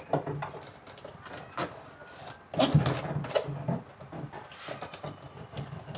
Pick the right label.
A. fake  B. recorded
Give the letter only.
B